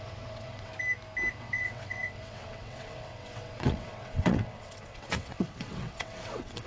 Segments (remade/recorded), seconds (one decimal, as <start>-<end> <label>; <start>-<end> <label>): 0.0-0.7 remade; 0.7-1.4 recorded; 1.4-6.7 remade